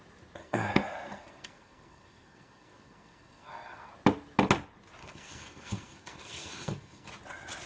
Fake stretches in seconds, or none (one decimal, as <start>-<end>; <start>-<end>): 0.4-3.9; 5.0-7.1